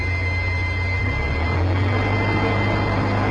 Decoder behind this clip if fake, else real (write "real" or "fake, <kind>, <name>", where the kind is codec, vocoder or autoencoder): real